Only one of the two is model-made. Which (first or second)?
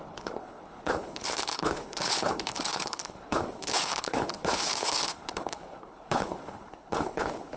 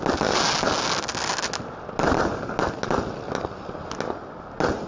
first